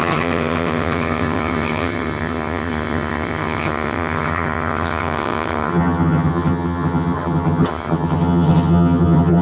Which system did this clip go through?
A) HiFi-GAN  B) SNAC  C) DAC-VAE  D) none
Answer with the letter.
A